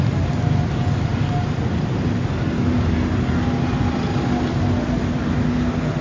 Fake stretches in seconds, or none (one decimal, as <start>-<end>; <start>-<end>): none